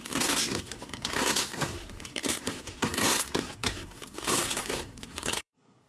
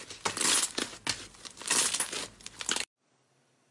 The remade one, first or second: first